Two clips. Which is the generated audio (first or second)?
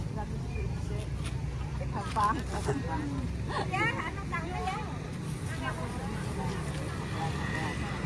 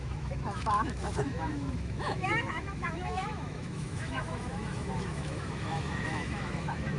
second